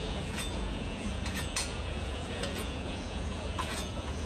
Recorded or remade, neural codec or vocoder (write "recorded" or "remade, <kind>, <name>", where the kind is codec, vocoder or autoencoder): remade, vocoder, Vocos